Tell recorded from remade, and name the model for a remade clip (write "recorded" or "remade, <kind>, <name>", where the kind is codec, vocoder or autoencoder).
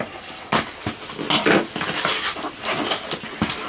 recorded